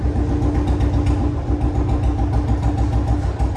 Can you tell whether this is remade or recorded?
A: recorded